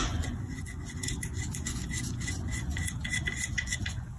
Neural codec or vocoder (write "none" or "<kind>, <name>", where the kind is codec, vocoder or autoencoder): vocoder, Vocos